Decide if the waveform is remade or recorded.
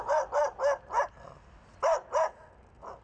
recorded